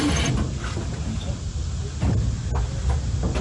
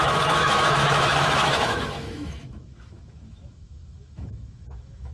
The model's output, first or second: second